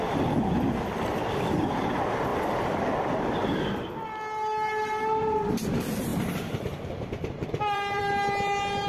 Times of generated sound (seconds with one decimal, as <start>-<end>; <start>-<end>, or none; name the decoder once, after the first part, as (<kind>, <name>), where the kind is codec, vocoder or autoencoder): 2.3-3.1 (vocoder, BigVGAN v2); 6.1-8.0

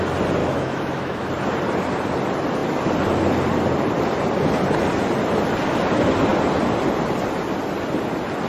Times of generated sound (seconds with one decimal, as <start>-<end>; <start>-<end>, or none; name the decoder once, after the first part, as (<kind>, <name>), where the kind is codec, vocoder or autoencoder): 0.4-1.3 (autoencoder, DAC-VAE)

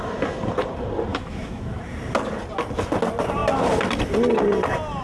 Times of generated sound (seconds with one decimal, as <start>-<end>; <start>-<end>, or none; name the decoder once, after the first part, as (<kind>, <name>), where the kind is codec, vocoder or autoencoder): 1.1-1.8 (autoencoder, DAC-VAE)